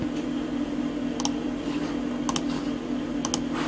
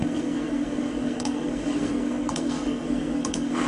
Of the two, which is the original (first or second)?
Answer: first